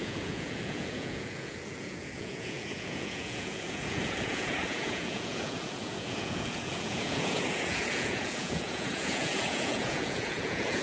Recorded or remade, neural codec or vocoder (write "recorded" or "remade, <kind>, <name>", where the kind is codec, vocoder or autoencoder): remade, vocoder, Vocos